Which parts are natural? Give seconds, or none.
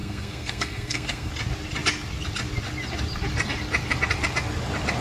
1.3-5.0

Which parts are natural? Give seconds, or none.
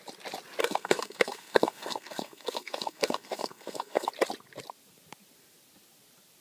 0.0-0.6; 4.1-6.4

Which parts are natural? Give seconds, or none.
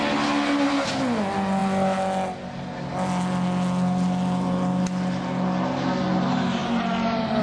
0.0-7.4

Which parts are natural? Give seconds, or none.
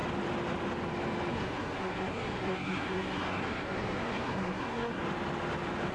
0.0-1.3; 5.0-5.9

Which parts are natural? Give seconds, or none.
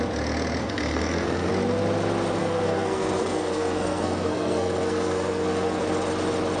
0.0-0.6; 1.5-2.4; 5.8-6.6